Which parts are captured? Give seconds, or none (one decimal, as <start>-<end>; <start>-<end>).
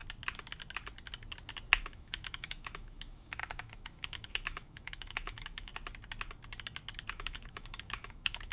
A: 0.0-1.8; 5.7-7.1